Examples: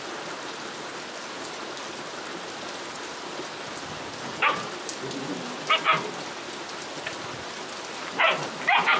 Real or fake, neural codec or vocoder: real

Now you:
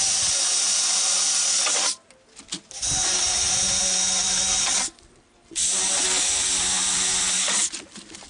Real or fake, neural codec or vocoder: real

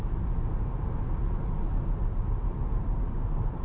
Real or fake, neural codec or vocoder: real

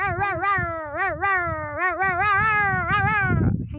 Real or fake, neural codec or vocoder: real